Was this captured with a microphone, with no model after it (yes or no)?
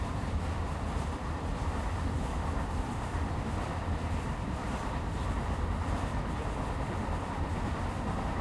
no